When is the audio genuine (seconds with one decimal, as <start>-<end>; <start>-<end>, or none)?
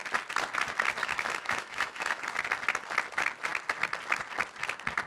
0.0-1.0; 2.2-5.1